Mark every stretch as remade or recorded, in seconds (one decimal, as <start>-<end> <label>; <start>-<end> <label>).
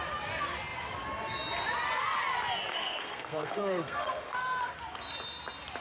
0.0-2.7 recorded; 2.7-4.7 remade; 4.7-5.8 recorded